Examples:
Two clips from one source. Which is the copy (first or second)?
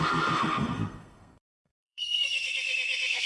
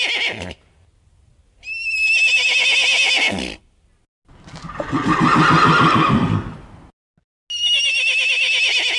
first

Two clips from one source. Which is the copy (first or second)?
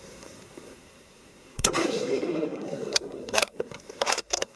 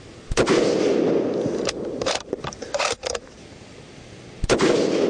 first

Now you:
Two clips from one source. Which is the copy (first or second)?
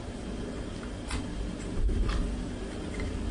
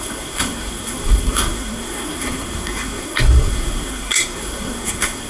second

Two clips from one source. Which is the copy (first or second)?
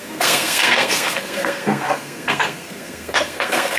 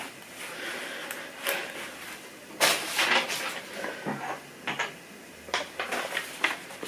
first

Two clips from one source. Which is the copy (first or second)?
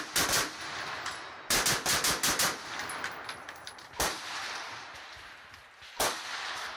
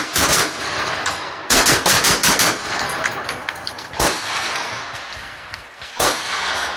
second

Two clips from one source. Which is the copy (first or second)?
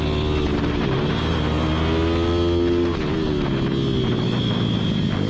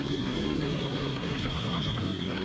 second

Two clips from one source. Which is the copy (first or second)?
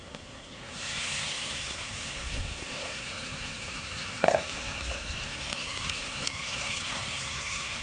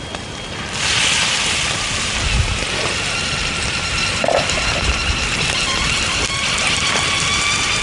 first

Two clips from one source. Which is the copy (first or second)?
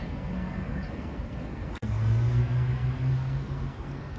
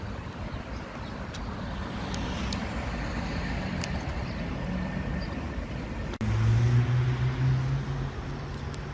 first